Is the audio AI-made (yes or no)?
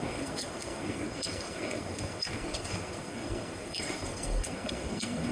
yes